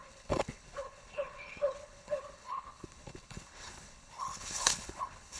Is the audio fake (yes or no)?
yes